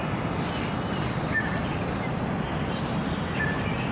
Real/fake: real